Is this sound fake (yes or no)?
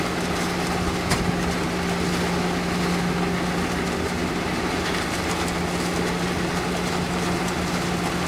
no